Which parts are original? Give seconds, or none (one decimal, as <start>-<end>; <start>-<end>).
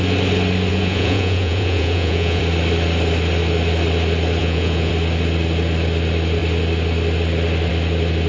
0.0-0.7; 2.4-4.4; 4.9-8.3